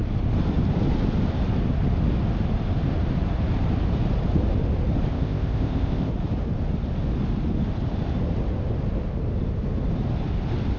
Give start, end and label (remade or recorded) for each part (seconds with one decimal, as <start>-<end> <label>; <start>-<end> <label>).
0.0-5.1 recorded; 5.1-6.1 remade; 6.1-10.8 recorded